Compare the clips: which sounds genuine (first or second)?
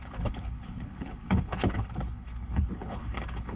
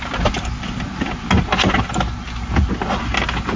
second